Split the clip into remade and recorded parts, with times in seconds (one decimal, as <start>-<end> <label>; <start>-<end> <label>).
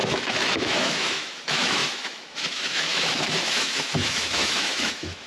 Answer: 0.0-5.3 remade